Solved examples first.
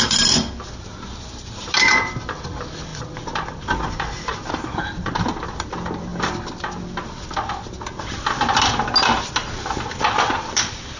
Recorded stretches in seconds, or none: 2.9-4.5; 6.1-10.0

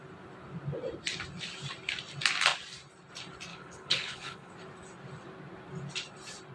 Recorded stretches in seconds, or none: 0.0-3.5; 4.5-6.5

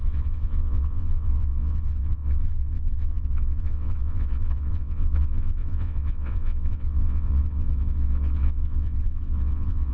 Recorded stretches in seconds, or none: none

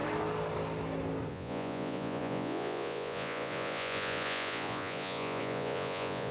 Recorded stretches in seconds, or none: 0.0-1.3

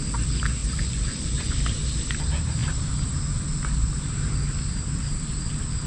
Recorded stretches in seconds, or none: 0.0-0.6; 1.5-5.9

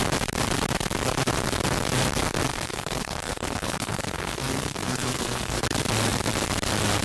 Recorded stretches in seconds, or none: 0.0-2.5; 5.6-7.0